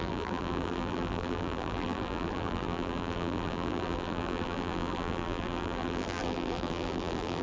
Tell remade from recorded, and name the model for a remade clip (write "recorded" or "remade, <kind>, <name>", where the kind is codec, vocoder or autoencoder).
remade, vocoder, BigVGAN v2